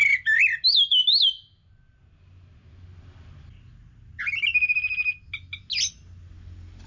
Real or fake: real